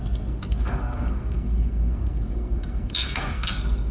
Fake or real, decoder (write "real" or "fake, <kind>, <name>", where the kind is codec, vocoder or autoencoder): fake, codec, SNAC